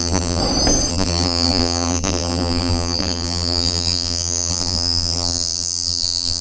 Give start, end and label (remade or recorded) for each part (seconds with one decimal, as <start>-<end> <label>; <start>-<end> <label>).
0.0-0.4 remade; 0.4-0.9 recorded; 0.9-6.4 remade